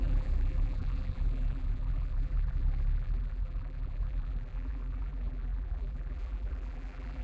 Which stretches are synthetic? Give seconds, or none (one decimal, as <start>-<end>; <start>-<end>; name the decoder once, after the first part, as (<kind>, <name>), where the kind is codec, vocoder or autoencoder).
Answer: 0.0-7.2 (vocoder, BigVGAN v2)